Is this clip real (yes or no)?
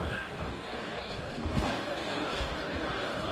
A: no